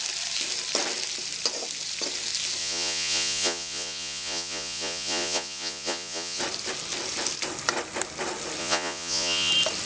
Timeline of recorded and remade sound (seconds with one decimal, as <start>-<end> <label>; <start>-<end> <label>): 0.0-2.6 recorded; 2.6-6.4 remade; 6.4-8.6 recorded; 8.6-9.5 remade; 9.5-9.9 recorded